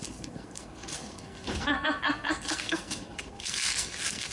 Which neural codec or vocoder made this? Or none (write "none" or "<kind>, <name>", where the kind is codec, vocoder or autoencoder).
codec, SNAC